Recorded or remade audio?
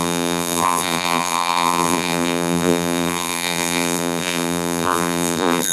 remade